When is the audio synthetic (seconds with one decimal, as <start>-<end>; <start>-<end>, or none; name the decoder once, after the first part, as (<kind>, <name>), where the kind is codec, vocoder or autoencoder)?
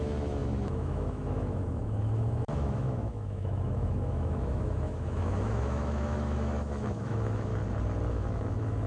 0.0-7.5 (autoencoder, DAC-VAE); 8.1-8.9